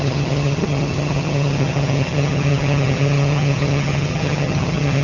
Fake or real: fake